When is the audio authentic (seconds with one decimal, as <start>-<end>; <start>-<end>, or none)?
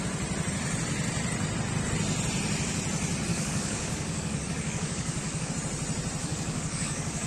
0.0-3.3; 5.5-6.2